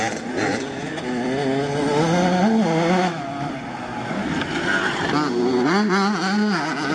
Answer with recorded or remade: recorded